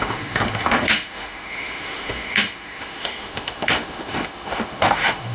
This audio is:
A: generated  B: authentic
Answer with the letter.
A